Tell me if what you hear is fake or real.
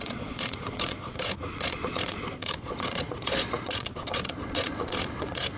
fake